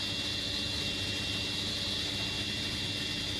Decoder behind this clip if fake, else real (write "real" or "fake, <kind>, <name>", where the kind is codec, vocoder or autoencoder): real